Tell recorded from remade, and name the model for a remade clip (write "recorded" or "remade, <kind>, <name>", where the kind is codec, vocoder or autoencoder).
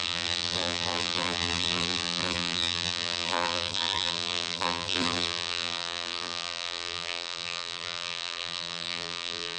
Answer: remade, vocoder, BigVGAN v2